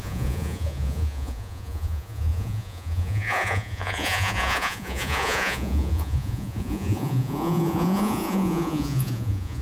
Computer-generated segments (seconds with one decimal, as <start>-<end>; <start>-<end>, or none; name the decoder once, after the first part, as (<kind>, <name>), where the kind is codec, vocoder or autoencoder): 0.0-9.6 (vocoder, Vocos)